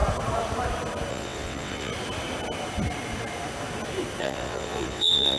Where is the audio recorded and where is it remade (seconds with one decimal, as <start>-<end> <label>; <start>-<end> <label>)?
0.0-1.1 recorded; 1.1-1.9 remade; 1.9-4.2 recorded; 4.2-5.4 remade